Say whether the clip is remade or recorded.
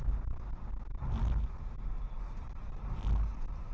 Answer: recorded